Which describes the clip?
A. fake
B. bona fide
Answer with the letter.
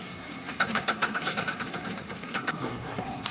A